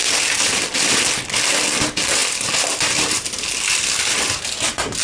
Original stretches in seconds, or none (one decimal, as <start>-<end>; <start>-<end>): 0.0-5.0